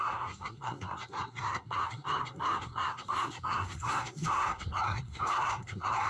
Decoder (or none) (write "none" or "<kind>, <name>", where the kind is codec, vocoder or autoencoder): codec, SNAC